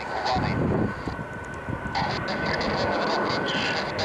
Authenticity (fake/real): real